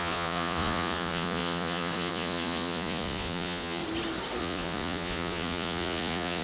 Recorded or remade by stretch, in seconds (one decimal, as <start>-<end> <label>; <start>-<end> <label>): 0.0-3.8 remade; 3.8-4.4 recorded; 4.4-6.4 remade